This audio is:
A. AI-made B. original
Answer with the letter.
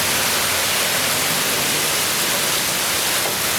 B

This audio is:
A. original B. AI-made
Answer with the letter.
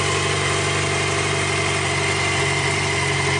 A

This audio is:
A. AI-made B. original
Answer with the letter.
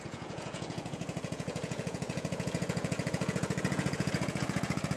A